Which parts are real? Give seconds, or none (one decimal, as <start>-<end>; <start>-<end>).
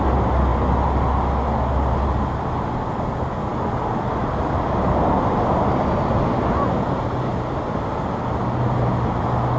0.0-9.6